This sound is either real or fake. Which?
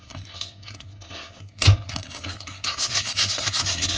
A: fake